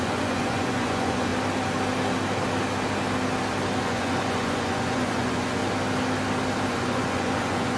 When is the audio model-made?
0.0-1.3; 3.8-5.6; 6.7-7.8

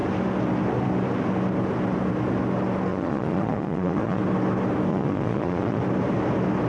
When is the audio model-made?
2.9-4.2; 4.9-5.8

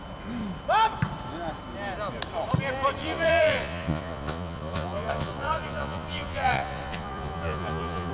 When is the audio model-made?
3.0-8.1